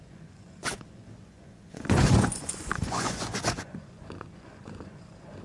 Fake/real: fake